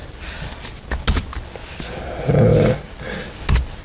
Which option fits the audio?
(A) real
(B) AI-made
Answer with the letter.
A